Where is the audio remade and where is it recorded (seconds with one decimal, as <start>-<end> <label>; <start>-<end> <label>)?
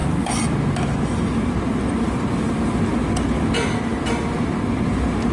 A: 0.0-3.9 recorded; 3.9-4.5 remade; 4.5-5.3 recorded